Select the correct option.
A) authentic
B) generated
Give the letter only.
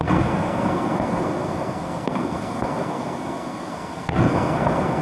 B